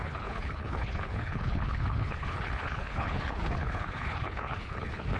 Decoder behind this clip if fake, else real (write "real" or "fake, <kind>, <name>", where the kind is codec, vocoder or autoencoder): fake, codec, HILCodec